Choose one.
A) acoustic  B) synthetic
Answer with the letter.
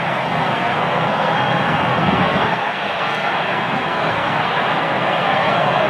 B